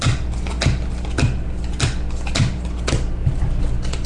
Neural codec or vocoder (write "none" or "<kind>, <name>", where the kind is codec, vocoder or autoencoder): none